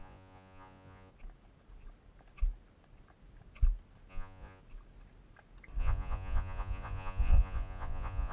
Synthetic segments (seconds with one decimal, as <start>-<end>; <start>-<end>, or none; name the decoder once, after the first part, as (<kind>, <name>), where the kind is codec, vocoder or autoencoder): 0.0-1.1 (vocoder, Vocos); 4.1-4.6; 5.8-8.3